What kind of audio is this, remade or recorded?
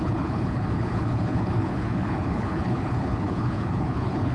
remade